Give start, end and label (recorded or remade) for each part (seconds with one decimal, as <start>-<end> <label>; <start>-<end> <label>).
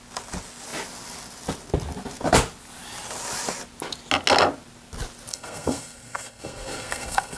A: 0.0-5.3 recorded; 5.3-7.4 remade